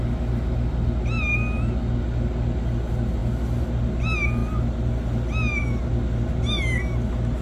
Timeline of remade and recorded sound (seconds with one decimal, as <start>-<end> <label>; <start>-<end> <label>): 0.0-7.4 recorded